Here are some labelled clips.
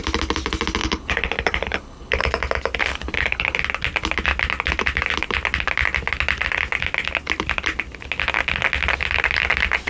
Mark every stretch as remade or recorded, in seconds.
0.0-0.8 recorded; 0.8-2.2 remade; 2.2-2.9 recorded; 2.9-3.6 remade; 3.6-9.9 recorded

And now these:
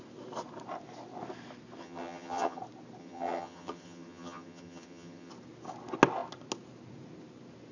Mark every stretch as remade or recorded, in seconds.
0.0-1.8 recorded; 1.8-2.6 remade; 2.6-3.0 recorded; 3.0-5.3 remade; 5.3-7.7 recorded

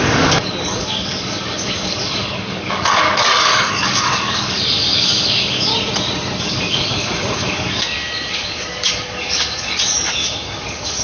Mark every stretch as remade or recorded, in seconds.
0.0-5.7 remade; 5.7-6.4 recorded; 6.4-11.0 remade

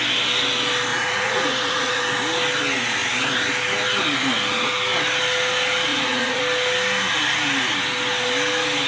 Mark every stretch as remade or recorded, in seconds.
0.0-0.9 recorded; 0.9-2.0 remade; 2.0-5.9 recorded; 5.9-6.4 remade; 6.4-8.9 recorded

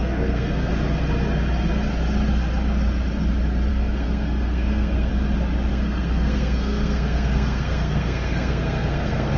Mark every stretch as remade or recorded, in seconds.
0.0-0.7 remade; 0.7-3.7 recorded; 3.7-5.1 remade; 5.1-5.7 recorded; 5.7-9.4 remade